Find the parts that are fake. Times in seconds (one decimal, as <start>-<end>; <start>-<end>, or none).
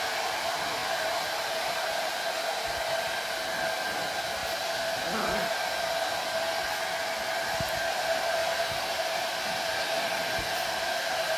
0.8-2.5; 8.4-9.0